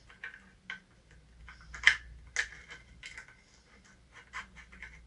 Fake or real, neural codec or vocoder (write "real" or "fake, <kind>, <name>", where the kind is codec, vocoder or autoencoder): real